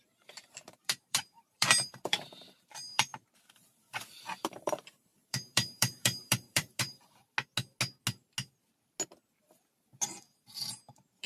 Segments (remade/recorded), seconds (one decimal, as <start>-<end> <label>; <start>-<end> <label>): 0.0-7.2 remade; 7.2-10.9 recorded; 10.9-11.3 remade